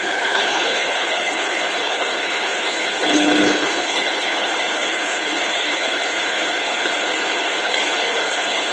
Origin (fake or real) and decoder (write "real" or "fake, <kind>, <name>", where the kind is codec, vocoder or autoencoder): fake, codec, HILCodec